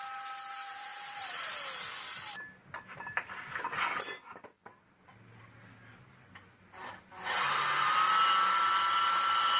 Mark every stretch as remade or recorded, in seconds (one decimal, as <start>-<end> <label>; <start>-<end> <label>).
0.0-0.7 recorded; 0.7-1.4 remade; 1.4-9.6 recorded